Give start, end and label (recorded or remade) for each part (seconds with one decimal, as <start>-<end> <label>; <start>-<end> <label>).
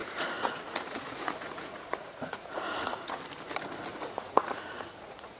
0.0-3.2 remade; 3.2-3.9 recorded; 3.9-5.4 remade